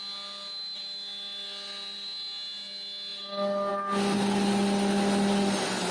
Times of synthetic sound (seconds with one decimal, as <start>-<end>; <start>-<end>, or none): none

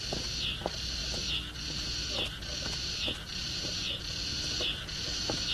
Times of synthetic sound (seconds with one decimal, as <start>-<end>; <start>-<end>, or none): none

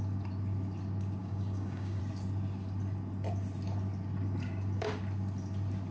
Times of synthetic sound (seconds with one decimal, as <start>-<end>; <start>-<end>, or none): 1.2-2.0

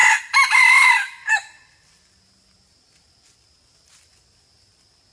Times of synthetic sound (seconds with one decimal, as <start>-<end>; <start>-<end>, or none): none

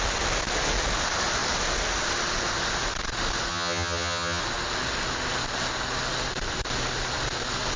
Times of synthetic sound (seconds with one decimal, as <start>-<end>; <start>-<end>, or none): 3.5-4.4

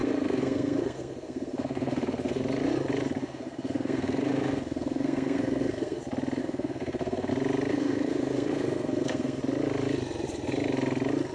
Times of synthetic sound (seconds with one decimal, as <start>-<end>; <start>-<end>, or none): 0.0-2.4; 3.2-6.0; 6.4-7.3; 7.7-9.4